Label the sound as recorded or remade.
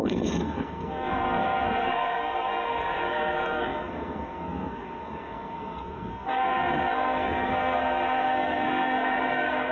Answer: remade